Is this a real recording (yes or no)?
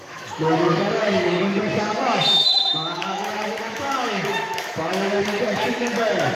no